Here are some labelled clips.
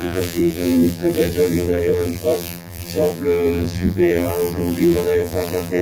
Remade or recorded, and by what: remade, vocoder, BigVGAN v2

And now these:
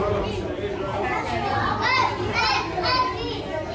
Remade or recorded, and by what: recorded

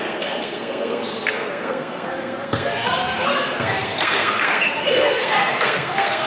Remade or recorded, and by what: remade, codec, SNAC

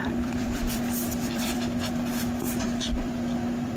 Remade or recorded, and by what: remade, vocoder, BigVGAN v2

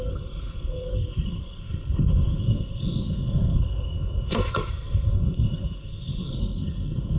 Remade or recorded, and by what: remade, codec, SNAC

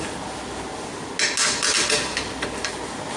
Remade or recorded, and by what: recorded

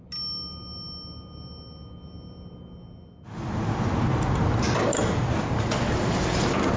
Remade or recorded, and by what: recorded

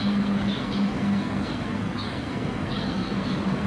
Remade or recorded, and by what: remade, codec, SNAC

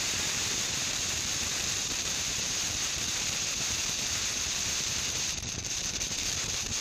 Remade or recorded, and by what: remade, vocoder, BigVGAN v2